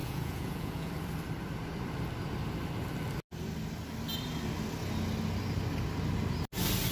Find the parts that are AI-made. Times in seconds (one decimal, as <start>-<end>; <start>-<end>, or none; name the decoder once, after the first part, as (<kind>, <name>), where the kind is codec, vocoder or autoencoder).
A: 0.0-0.9 (vocoder, Vocos)